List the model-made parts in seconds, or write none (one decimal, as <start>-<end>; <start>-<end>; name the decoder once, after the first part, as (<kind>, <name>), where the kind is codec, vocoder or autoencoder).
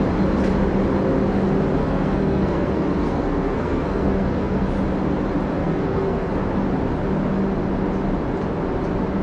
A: 1.8-4.7 (codec, SNAC); 5.6-6.3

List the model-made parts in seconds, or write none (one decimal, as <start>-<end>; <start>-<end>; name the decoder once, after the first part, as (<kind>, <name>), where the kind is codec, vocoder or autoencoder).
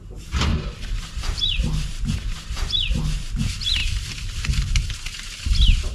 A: 0.5-2.7 (vocoder, BigVGAN v2); 3.8-4.7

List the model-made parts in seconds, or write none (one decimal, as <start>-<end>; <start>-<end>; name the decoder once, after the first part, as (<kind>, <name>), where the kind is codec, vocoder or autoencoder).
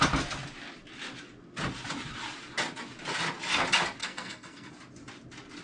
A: 4.0-4.7 (codec, SNAC)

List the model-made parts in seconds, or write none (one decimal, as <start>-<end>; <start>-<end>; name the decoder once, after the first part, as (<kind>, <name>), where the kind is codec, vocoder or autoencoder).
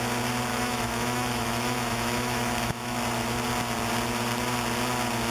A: 0.5-3.0 (autoencoder, DAC-VAE)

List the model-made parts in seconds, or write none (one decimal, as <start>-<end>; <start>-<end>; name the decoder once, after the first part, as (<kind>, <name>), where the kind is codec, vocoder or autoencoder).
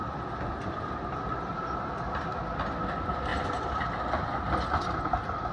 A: 3.3-4.1 (vocoder, BigVGAN v2)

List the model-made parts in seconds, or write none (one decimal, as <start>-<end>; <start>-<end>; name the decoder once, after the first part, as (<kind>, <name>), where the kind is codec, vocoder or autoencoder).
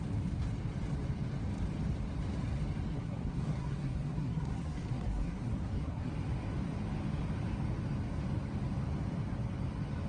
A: 2.9-6.1 (codec, SNAC)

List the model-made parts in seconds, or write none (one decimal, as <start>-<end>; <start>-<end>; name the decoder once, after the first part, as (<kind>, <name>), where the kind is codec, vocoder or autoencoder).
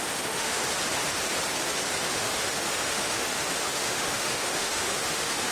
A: 0.0-0.6 (autoencoder, DAC-VAE); 2.1-5.5